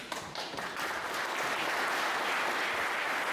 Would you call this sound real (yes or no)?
yes